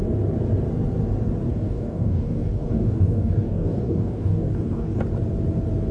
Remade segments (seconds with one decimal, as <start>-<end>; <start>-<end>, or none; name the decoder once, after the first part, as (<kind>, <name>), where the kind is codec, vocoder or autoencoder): 1.5-5.0 (codec, DAC)